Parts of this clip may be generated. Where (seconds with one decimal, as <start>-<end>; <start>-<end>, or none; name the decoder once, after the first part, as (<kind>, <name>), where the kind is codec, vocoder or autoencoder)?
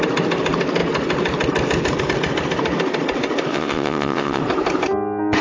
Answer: 3.5-4.4 (vocoder, WaveNeXt)